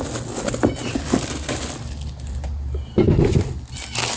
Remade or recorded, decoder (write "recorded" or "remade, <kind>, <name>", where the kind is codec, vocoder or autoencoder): recorded